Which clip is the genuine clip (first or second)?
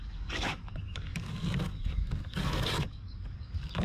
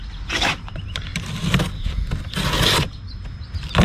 second